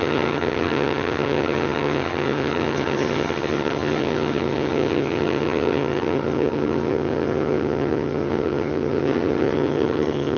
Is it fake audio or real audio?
fake